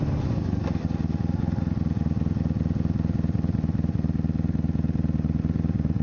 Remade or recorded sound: recorded